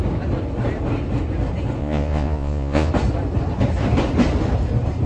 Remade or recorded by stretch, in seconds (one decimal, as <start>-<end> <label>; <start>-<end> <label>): 0.0-1.8 recorded; 1.8-2.9 remade; 2.9-5.1 recorded